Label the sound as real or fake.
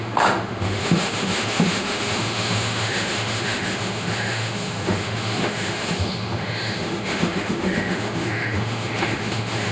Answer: fake